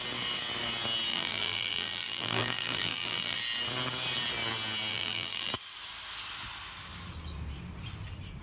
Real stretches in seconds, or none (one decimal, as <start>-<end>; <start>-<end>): 0.0-1.1; 3.4-4.9; 5.5-8.4